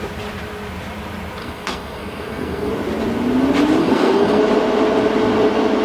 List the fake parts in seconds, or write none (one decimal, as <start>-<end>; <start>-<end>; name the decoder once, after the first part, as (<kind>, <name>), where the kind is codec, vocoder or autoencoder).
1.4-2.7 (codec, SNAC); 3.8-4.4